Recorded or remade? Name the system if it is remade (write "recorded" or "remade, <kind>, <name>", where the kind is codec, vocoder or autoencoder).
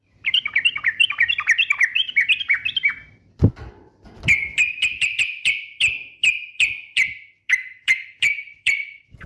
remade, vocoder, BigVGAN v2